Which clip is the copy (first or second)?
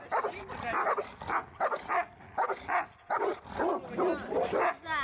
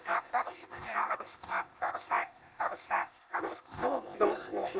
second